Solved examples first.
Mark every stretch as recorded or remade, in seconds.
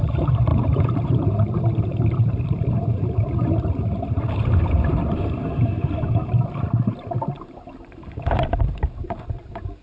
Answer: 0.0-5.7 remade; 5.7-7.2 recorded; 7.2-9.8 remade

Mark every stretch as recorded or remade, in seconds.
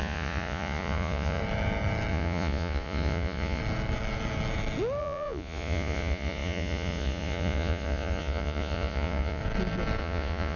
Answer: 0.0-1.4 remade; 1.4-2.1 recorded; 2.1-3.6 remade; 3.6-5.0 recorded; 5.0-9.4 remade; 9.4-10.0 recorded; 10.0-10.6 remade